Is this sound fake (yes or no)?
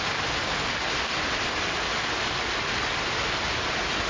no